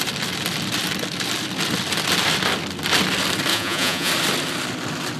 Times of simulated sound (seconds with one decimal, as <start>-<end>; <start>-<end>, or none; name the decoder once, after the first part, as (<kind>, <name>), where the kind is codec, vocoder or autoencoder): 3.5-4.1 (vocoder, Vocos)